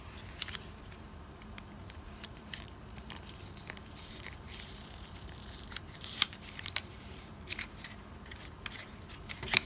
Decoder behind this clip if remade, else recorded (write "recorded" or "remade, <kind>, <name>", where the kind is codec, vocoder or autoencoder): remade, vocoder, BigVGAN v2